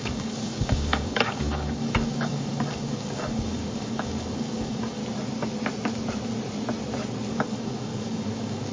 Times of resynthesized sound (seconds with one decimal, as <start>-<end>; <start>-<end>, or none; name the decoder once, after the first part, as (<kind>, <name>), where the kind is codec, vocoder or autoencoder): 0.0-5.0 (codec, DAC); 7.3-8.7